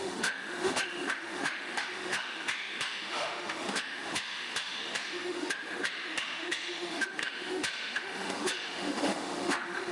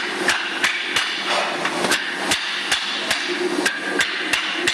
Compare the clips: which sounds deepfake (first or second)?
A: first